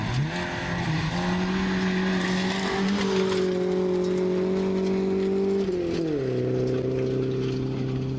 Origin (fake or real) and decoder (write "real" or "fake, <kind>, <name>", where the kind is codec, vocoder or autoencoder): real